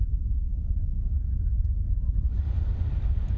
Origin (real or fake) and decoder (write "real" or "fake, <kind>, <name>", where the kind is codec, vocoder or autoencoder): real